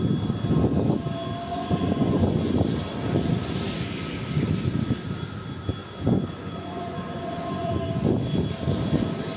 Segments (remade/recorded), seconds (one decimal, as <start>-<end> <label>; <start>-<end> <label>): 0.0-1.5 recorded; 1.5-2.5 remade; 2.5-5.8 recorded; 5.8-7.7 remade; 7.7-9.4 recorded

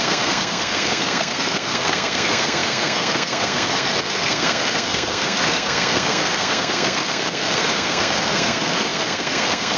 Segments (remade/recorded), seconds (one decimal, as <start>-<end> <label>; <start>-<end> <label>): 0.0-9.8 remade